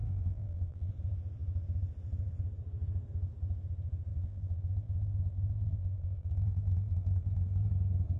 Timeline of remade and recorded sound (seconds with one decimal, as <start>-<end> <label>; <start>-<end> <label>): 0.0-0.9 remade; 0.9-4.1 recorded; 4.1-7.7 remade; 7.7-8.2 recorded